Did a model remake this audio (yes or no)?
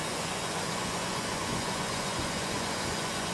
yes